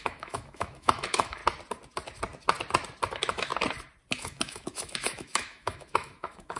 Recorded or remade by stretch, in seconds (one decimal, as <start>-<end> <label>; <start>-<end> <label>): 0.0-1.4 remade; 1.4-3.1 recorded; 3.1-3.5 remade; 3.5-4.1 recorded; 4.1-6.6 remade